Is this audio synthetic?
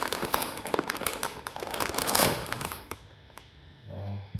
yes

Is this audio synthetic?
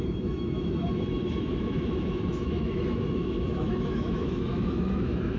yes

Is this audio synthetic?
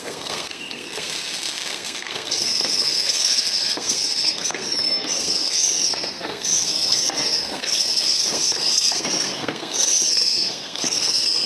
yes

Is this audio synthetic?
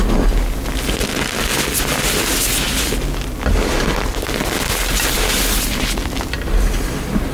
no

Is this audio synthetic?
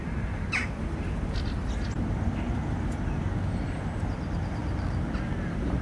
no